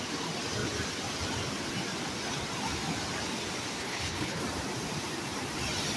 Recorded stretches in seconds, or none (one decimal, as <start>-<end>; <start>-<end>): 0.0-3.8; 4.4-6.0